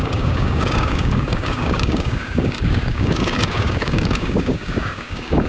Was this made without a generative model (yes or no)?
no